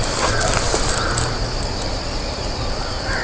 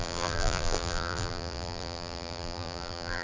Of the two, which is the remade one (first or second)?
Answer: second